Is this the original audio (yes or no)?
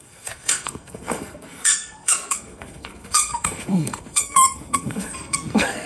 no